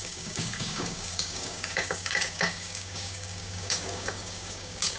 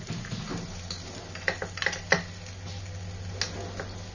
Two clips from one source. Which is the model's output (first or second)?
first